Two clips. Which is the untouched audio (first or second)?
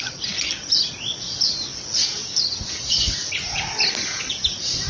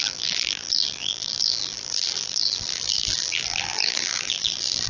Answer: first